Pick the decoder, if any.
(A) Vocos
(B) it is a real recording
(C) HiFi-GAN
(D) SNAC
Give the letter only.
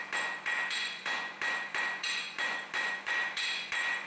A